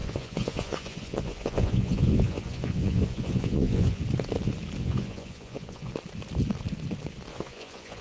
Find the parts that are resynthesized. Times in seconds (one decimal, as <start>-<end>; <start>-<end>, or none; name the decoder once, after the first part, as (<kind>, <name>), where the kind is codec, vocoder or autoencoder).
0.0-4.0 (vocoder, Vocos); 4.8-5.9; 7.3-8.0